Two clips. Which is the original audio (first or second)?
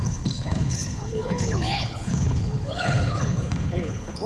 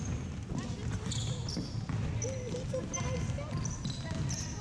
second